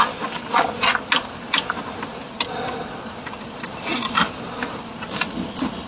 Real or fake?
real